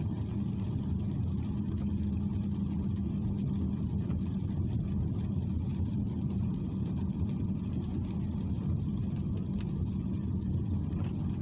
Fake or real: real